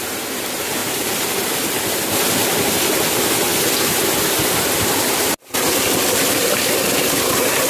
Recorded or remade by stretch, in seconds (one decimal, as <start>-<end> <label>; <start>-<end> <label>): 0.0-7.7 recorded